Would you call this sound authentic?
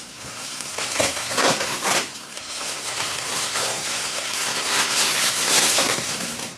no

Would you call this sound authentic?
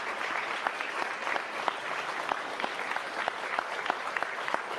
yes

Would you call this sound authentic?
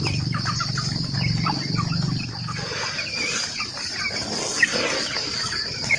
yes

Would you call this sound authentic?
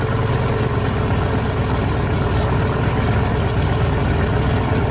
yes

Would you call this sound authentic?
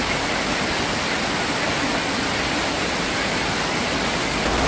yes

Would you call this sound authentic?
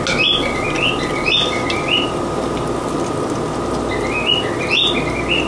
yes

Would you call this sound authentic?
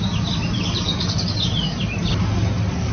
yes